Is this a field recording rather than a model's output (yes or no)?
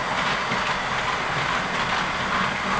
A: yes